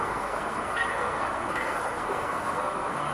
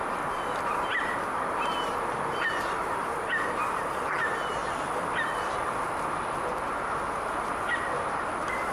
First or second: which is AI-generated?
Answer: first